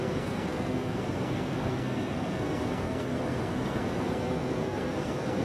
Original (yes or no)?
no